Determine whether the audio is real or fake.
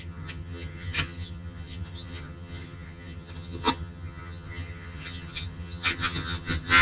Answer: fake